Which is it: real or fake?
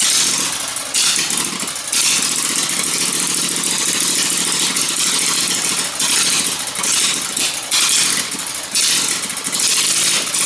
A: real